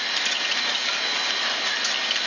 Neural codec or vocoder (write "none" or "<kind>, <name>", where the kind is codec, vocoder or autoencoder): none